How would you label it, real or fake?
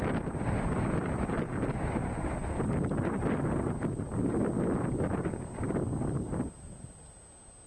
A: real